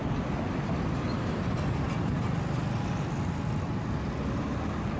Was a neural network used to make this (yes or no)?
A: no